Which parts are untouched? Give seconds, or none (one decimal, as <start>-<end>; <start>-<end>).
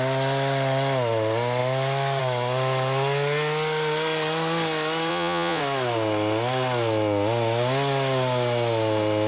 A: 0.0-5.1; 5.6-9.3